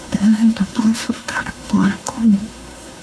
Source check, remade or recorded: remade